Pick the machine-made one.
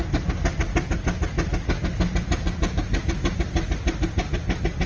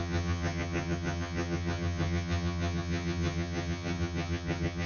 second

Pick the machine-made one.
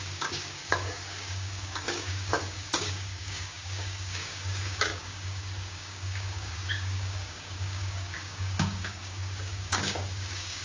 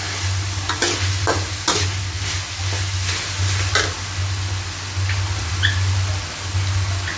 first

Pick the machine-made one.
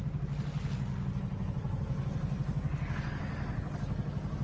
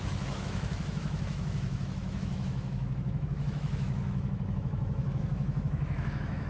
second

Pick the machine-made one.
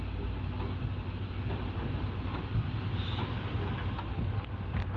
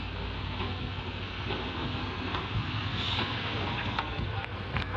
second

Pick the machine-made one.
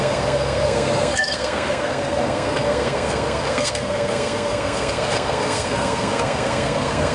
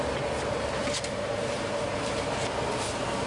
first